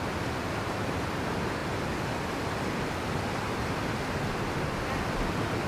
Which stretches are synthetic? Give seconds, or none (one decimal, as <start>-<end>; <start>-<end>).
none